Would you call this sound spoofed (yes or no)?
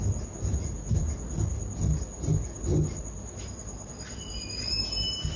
no